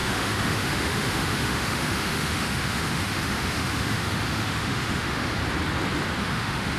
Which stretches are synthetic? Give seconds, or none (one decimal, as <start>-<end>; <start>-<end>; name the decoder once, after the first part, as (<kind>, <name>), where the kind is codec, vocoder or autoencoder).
0.0-5.4 (autoencoder, DAC-VAE); 6.2-6.8